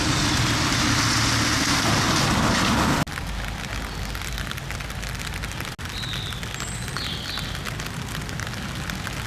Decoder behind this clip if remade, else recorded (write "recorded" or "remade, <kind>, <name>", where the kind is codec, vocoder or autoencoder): recorded